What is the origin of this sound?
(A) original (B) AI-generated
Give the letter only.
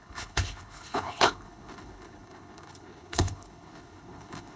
B